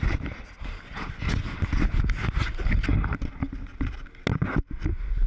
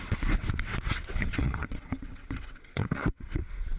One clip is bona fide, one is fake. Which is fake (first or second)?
second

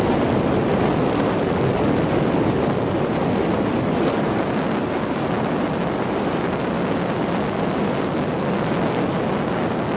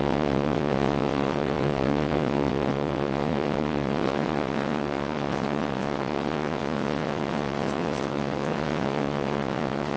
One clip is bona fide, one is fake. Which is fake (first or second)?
second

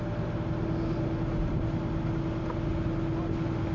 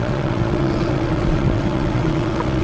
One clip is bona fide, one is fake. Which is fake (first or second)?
second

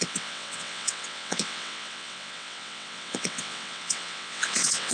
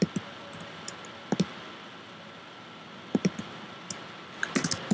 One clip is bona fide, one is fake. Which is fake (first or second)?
first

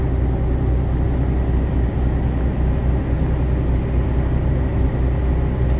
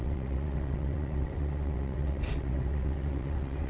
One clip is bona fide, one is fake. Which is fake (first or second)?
second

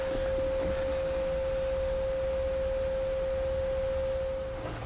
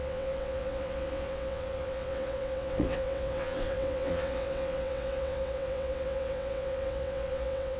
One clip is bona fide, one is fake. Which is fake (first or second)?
second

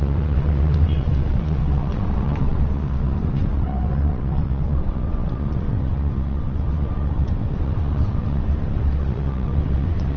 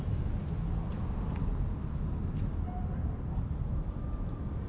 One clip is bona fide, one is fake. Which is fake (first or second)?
first